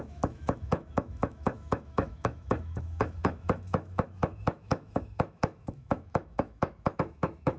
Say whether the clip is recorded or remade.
remade